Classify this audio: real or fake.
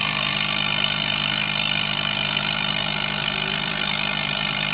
fake